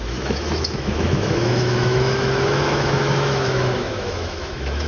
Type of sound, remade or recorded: remade